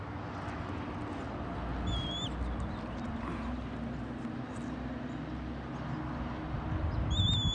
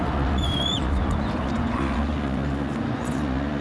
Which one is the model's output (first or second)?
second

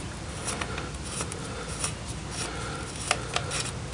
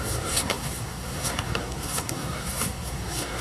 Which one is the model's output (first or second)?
second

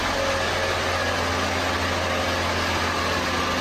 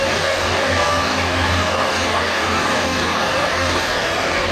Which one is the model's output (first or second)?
second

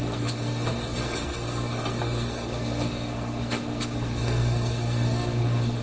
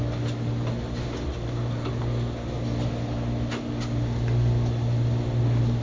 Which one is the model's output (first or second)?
first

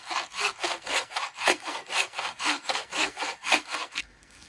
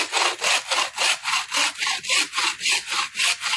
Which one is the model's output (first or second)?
first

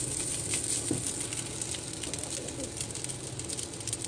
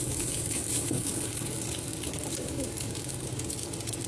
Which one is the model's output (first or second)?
second